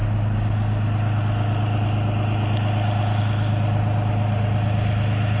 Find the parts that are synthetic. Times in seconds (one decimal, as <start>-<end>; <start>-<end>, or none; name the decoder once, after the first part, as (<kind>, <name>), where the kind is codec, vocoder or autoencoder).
none